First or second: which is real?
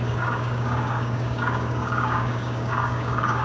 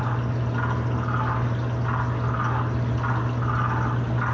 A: second